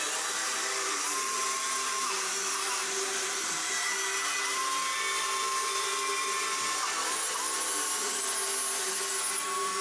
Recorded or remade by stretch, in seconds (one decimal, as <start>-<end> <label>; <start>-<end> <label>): 0.0-4.6 remade; 4.6-9.3 recorded; 9.3-9.8 remade